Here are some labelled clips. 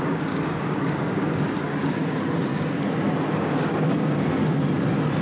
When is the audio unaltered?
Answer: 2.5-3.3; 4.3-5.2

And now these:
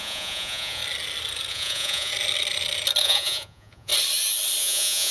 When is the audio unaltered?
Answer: 0.8-1.5; 2.1-3.0; 3.9-4.6

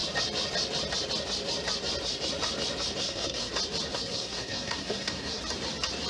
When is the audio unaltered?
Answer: 0.0-3.0; 3.5-3.9; 5.4-6.1

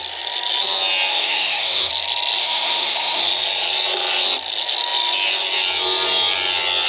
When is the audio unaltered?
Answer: 0.0-1.1; 1.9-2.4; 3.2-6.9

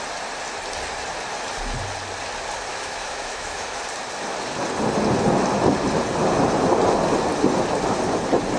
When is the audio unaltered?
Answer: 0.0-2.7; 3.8-8.6

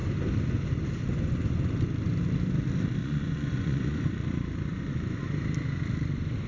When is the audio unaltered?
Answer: 0.0-3.0; 4.1-4.7; 5.2-6.5

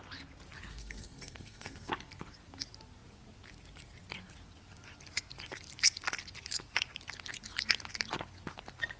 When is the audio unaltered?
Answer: 0.0-0.7; 1.9-9.0

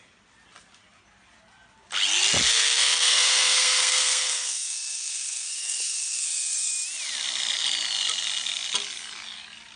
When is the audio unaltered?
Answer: 0.0-2.5; 6.7-9.8